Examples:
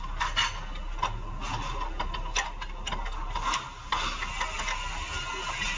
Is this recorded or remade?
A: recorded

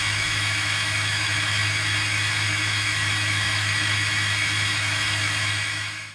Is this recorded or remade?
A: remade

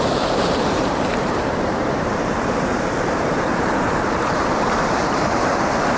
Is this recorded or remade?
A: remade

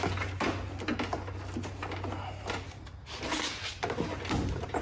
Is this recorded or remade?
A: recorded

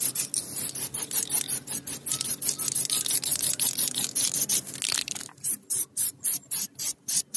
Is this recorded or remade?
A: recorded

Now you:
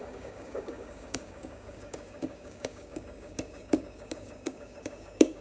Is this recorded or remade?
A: remade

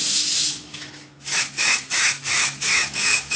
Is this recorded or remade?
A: remade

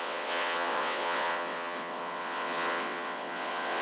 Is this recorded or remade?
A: remade